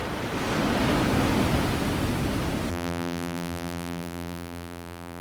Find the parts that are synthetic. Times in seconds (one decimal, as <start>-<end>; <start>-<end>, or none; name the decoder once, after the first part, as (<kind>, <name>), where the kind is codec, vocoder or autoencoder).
2.7-5.2 (vocoder, BigVGAN v2)